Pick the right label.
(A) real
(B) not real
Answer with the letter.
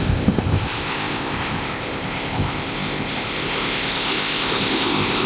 B